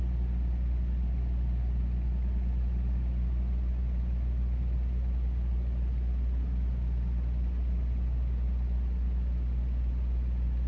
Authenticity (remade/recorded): recorded